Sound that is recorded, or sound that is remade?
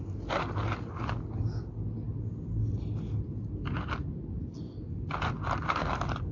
recorded